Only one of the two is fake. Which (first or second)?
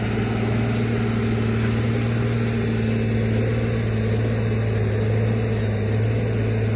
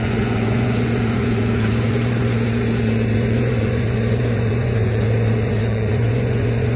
second